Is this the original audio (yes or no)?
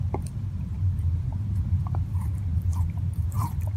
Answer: no